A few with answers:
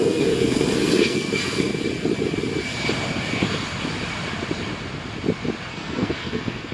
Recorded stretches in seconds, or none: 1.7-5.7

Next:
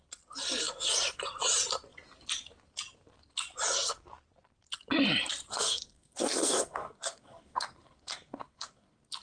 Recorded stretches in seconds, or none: 0.0-5.5